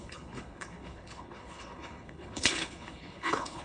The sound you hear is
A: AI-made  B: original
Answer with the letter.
A